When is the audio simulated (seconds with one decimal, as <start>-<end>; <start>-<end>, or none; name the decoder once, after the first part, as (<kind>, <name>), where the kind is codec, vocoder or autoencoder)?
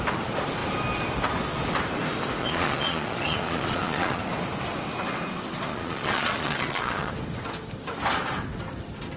2.4-4.2 (vocoder, Vocos); 5.7-7.1